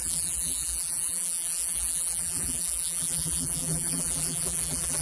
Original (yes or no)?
no